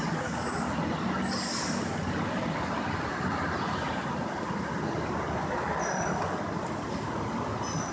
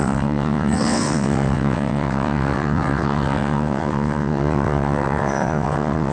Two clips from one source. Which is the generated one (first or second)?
second